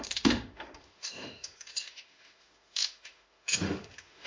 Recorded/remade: remade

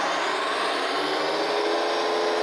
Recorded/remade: recorded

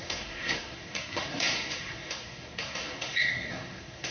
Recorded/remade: remade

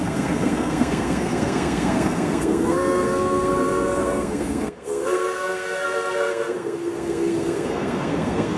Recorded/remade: remade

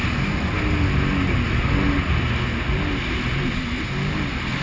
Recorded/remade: recorded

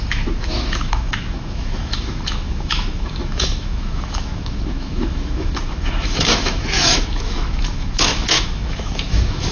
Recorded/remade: remade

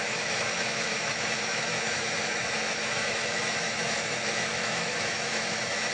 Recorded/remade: remade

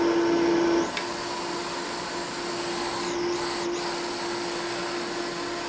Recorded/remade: recorded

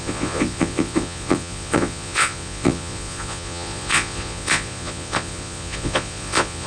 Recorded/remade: remade